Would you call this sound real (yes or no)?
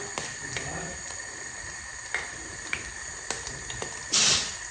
yes